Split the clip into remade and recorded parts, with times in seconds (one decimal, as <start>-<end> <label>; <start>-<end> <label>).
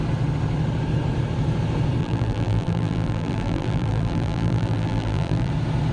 0.0-2.0 recorded; 2.0-5.5 remade; 5.5-5.9 recorded